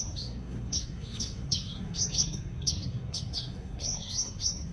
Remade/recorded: remade